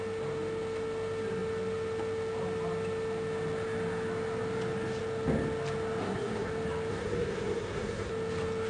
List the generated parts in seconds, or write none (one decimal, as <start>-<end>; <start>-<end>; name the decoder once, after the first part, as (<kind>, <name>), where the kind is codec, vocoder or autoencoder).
6.0-6.5 (codec, SNAC); 6.9-8.1